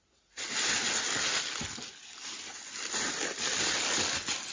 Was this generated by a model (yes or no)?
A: no